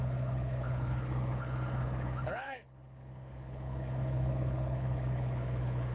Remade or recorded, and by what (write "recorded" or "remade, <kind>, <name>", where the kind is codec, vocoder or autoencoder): remade, codec, HILCodec